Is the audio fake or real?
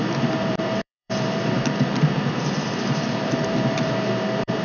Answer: fake